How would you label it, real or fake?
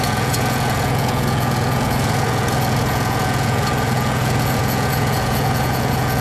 fake